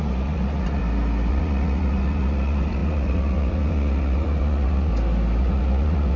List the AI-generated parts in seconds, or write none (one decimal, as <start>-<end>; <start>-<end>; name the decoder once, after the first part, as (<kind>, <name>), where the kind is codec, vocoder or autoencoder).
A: 0.0-0.8 (vocoder, Vocos); 1.3-4.9; 5.4-6.2